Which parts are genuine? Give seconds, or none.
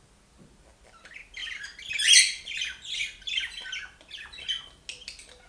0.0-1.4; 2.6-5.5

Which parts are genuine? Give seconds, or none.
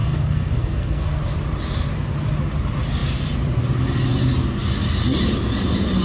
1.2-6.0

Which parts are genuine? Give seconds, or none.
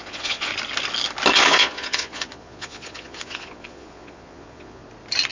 0.5-1.3; 4.8-5.3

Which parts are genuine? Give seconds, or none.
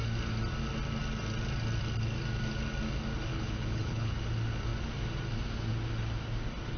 0.0-3.3; 4.1-6.8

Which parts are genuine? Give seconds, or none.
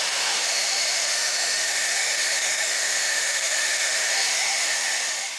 none